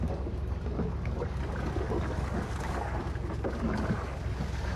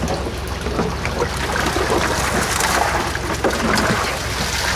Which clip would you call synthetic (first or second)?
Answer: first